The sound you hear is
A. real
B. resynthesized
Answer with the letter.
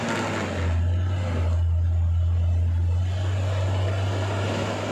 A